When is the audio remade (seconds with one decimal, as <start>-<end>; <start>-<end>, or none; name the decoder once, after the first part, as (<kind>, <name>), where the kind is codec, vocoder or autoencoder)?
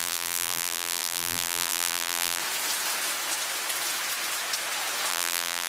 0.0-2.4 (vocoder, BigVGAN v2); 5.1-5.7